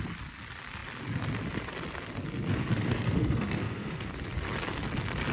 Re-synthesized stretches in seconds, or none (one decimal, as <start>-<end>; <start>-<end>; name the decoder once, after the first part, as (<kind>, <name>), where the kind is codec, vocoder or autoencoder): 2.5-4.1 (codec, SNAC)